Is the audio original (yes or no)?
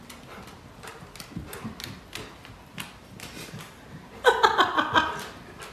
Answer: yes